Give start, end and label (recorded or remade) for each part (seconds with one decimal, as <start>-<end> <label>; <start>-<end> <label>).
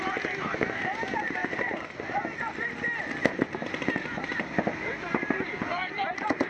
0.0-1.4 recorded; 1.4-1.9 remade; 1.9-6.5 recorded